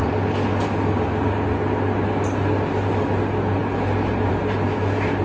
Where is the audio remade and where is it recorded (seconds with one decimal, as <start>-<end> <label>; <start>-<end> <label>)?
0.0-5.2 recorded